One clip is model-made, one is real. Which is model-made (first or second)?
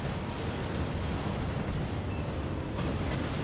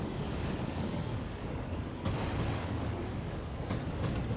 second